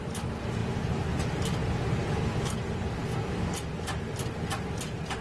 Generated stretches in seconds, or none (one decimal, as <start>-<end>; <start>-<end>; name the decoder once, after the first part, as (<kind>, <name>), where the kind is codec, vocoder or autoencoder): none